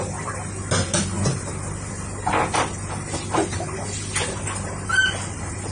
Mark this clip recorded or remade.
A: recorded